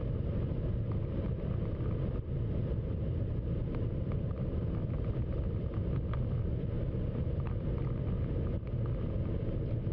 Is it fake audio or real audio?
real